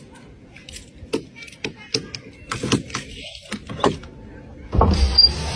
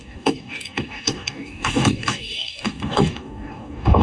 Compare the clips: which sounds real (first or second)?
first